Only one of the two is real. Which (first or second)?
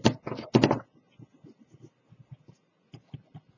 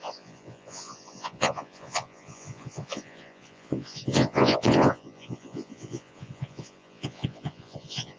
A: first